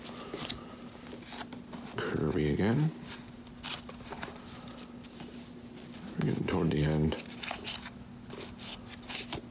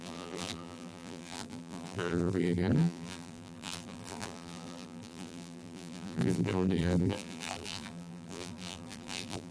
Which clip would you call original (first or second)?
first